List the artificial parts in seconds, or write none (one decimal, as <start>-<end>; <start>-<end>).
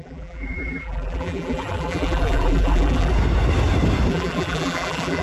0.0-3.1; 4.1-5.2